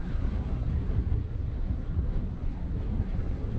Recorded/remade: remade